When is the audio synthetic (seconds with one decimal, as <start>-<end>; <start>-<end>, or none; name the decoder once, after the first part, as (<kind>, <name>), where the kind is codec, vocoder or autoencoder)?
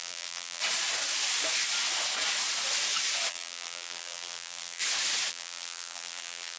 0.0-0.6 (vocoder, BigVGAN v2); 3.3-4.8; 5.3-6.6